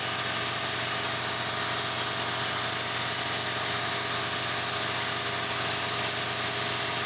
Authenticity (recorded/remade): recorded